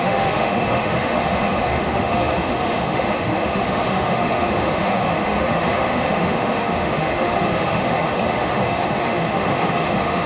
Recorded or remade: remade